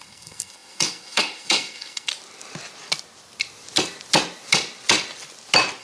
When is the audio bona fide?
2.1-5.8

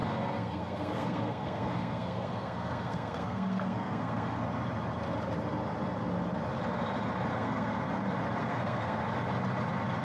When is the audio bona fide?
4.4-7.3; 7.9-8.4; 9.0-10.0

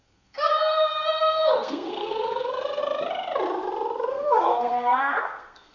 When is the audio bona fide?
0.5-1.2; 2.8-4.1

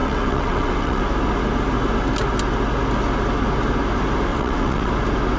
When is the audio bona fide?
1.0-4.3; 4.9-5.4

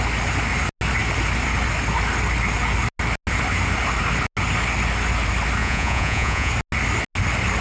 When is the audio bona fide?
0.0-5.6; 6.5-7.6

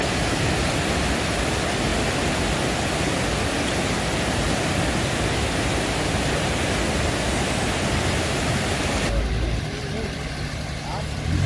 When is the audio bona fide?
0.0-11.5

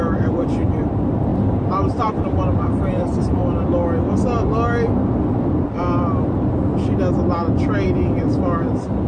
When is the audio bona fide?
3.4-8.6